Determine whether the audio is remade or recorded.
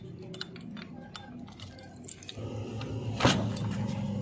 recorded